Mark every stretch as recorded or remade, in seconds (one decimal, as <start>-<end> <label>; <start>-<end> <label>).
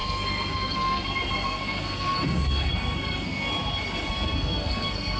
0.0-3.5 remade; 3.5-4.1 recorded; 4.1-5.2 remade